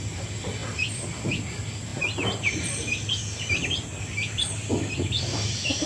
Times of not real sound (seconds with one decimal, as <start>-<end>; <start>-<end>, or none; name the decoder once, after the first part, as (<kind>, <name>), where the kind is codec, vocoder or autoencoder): 1.9-5.4 (vocoder, BigVGAN v2)